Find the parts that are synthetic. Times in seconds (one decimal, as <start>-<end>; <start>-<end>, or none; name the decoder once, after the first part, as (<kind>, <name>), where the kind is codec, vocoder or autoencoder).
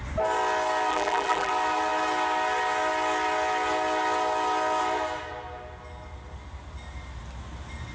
0.9-1.5 (vocoder, BigVGAN v2)